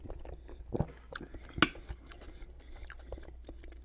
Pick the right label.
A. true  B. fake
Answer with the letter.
A